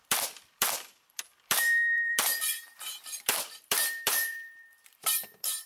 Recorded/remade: remade